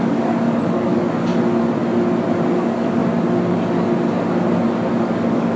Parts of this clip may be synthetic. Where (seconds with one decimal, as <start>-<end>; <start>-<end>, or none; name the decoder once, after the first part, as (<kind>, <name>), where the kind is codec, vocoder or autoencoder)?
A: 0.0-1.3 (codec, DAC); 2.4-3.0; 5.0-5.6